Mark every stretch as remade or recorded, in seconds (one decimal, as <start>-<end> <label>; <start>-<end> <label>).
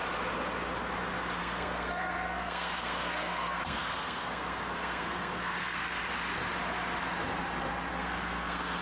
0.0-1.4 recorded; 1.4-6.0 remade; 6.0-7.9 recorded; 7.9-8.8 remade